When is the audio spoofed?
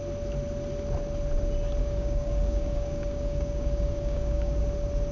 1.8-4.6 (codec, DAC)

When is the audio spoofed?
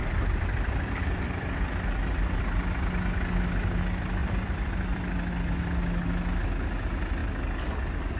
0.0-2.4 (vocoder, BigVGAN v2); 4.2-5.3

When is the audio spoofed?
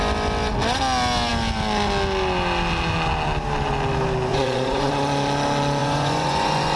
4.3-4.9 (vocoder, Vocos); 5.8-6.8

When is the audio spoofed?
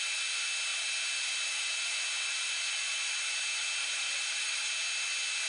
3.8-4.7 (vocoder, BigVGAN v2)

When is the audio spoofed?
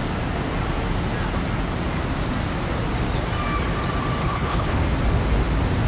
4.2-4.8 (codec, HILCodec)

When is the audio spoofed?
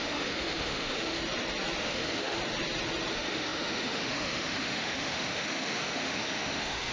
0.0-1.2 (autoencoder, DAC-VAE); 1.8-2.4; 3.1-6.9